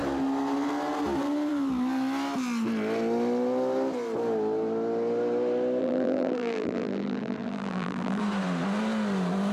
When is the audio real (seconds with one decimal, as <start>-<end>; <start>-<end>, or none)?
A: 0.0-5.8; 8.2-9.5